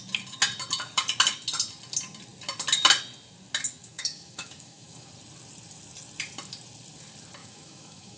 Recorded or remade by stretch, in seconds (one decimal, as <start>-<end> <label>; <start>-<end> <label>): 0.0-3.8 recorded; 3.8-5.1 remade; 5.1-7.4 recorded; 7.4-8.2 remade